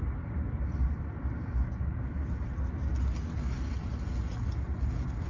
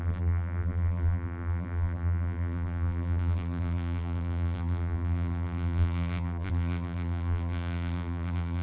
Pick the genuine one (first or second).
first